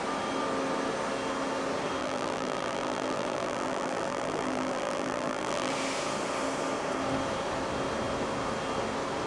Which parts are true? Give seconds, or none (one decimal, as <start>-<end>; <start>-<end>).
0.0-2.0; 5.7-9.3